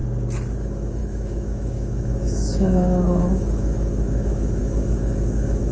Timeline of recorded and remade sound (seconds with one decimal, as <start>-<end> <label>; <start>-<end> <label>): 0.0-0.6 recorded; 0.6-5.7 remade